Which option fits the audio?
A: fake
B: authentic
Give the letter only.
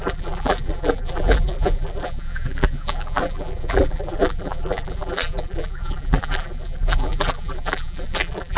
A